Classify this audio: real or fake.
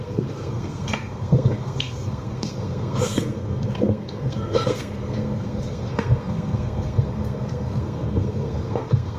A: fake